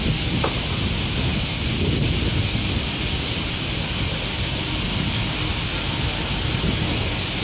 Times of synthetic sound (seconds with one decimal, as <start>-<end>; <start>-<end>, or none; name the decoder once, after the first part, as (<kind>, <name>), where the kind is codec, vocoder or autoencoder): none